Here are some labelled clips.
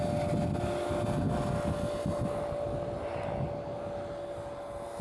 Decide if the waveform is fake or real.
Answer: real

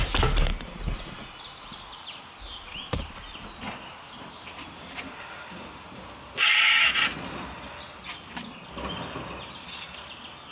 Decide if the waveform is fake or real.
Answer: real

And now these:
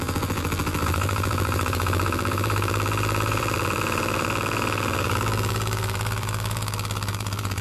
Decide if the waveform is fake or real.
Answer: fake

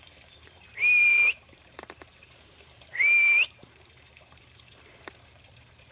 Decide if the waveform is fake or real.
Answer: fake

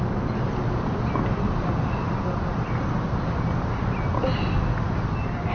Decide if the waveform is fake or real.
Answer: real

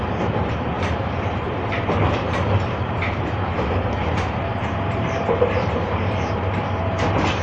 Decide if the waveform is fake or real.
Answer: fake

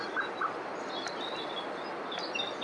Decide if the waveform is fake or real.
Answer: real